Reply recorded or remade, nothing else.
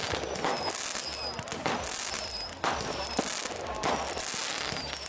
recorded